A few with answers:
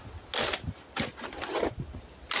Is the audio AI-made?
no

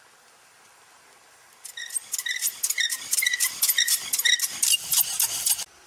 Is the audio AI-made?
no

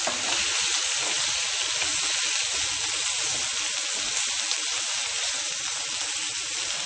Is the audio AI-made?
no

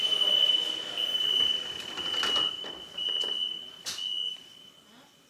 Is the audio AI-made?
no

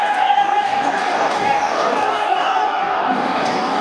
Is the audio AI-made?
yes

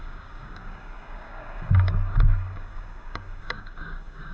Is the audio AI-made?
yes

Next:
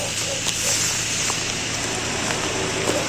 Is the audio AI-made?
no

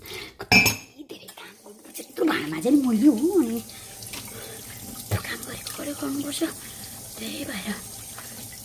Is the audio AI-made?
no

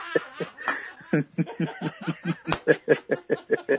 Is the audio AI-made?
no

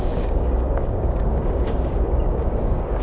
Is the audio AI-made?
yes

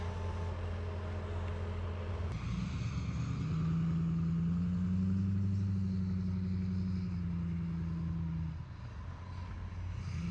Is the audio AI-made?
no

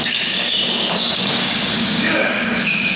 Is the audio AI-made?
yes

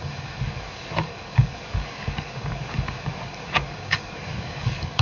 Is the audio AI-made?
yes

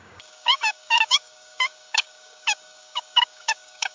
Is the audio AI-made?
yes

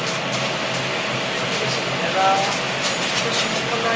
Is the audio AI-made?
no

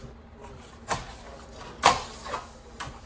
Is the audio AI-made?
no